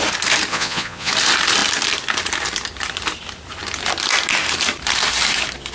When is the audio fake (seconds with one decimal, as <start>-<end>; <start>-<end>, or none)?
0.5-1.1